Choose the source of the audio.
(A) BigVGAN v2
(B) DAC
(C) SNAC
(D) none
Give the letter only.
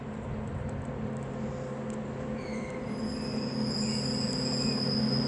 D